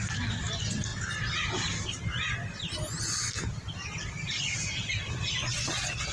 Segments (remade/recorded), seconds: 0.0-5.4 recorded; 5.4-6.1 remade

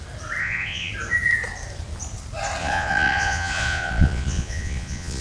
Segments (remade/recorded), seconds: 0.0-0.4 recorded; 0.4-0.9 remade; 0.9-2.6 recorded; 2.6-5.2 remade